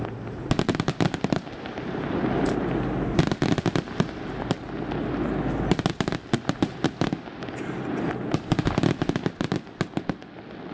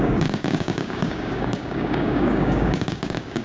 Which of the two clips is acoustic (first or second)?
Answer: first